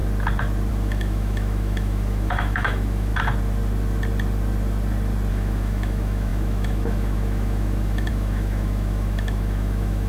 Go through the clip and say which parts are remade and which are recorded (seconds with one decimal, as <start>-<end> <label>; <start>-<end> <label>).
0.0-0.7 recorded; 0.7-3.1 remade; 3.1-5.3 recorded; 5.3-10.1 remade